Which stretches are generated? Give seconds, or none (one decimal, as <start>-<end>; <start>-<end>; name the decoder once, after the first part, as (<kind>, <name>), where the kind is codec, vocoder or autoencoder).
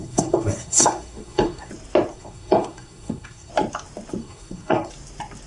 0.0-1.7 (codec, SNAC); 2.1-3.5; 4.2-4.9